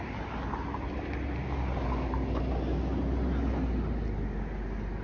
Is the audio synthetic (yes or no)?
no